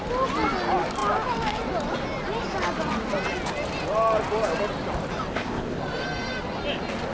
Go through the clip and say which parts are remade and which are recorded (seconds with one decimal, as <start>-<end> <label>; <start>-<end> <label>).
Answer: 0.0-5.3 recorded; 5.3-5.8 remade; 5.8-7.1 recorded